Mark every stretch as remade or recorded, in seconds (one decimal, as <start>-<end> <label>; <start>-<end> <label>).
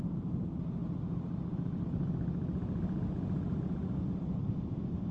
0.0-5.1 recorded